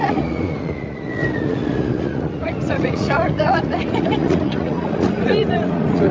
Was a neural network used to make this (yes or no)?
yes